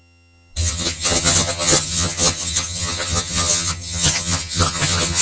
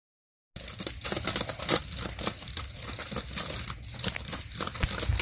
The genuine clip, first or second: second